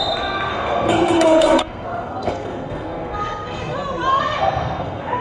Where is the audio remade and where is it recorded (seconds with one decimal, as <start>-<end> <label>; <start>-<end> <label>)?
0.0-0.5 recorded; 0.5-3.6 remade; 3.6-4.1 recorded; 4.1-5.2 remade